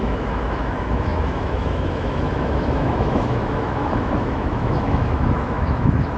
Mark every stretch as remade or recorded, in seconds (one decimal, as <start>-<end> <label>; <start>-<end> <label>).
0.0-6.2 remade